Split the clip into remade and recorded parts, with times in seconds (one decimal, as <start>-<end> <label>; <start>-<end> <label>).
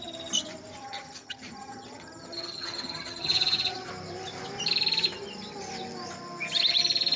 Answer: 0.0-0.8 recorded; 0.8-3.9 remade; 3.9-7.2 recorded